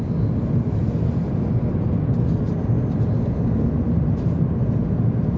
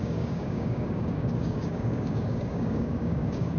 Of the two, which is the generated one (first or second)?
second